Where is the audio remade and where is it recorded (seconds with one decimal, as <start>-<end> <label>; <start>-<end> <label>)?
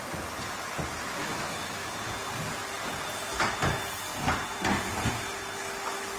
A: 0.0-1.2 recorded; 1.2-1.9 remade; 1.9-6.2 recorded